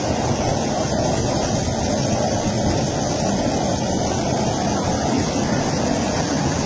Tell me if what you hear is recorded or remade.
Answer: recorded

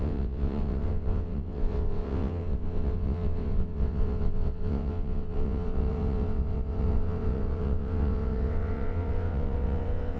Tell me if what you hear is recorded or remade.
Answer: remade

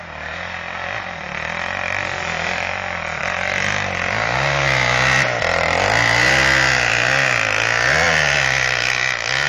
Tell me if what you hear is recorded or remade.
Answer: recorded